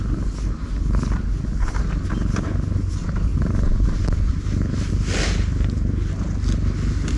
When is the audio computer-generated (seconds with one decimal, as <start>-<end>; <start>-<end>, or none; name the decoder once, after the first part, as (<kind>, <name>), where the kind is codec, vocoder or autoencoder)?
3.0-4.9 (vocoder, BigVGAN v2)